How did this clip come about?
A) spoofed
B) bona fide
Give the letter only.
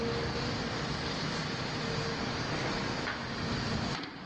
B